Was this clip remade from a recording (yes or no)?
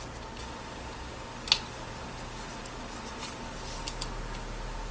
no